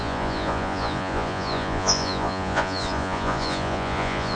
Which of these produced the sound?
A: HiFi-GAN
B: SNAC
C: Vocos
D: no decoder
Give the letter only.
C